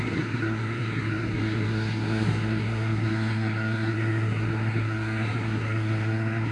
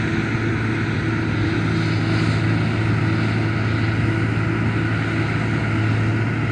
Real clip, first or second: second